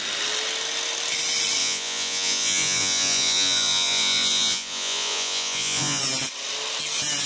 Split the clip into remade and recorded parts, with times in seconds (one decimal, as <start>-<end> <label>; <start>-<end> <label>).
0.0-1.6 recorded; 1.6-6.0 remade; 6.0-7.3 recorded